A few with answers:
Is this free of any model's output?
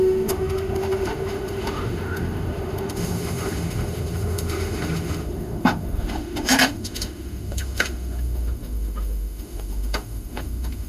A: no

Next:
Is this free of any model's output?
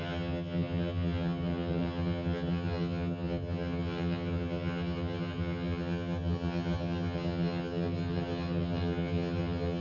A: no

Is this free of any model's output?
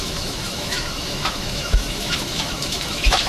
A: no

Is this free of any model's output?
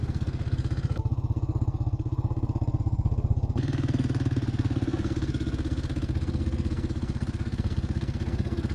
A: no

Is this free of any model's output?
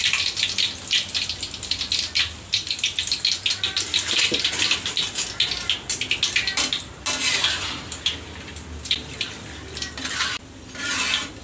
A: yes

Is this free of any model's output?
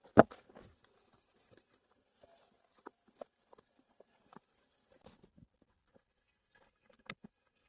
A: yes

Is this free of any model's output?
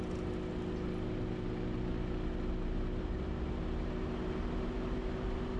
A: yes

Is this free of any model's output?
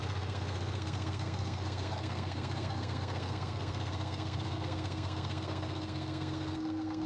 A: no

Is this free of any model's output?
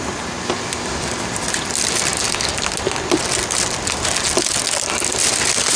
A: yes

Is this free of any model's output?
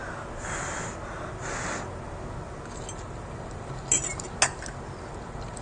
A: yes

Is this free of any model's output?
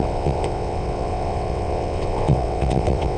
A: no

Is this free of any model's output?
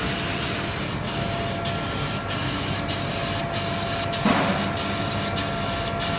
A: yes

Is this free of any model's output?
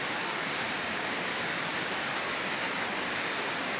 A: no